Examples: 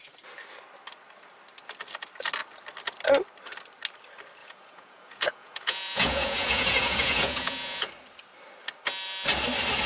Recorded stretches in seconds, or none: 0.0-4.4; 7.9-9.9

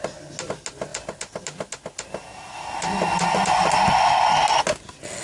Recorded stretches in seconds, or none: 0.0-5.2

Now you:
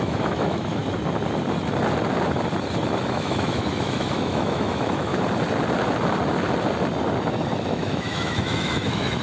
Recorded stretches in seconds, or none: 0.8-3.0; 5.1-7.7